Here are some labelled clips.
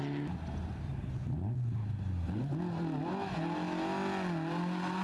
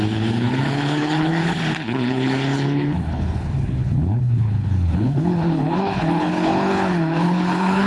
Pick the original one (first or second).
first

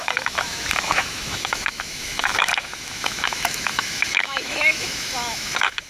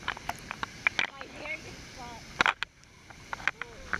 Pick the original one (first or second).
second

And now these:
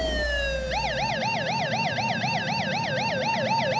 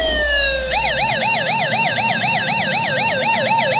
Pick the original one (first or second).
first